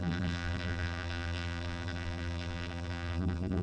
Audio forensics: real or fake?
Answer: fake